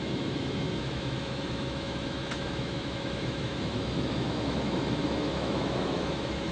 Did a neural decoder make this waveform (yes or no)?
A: yes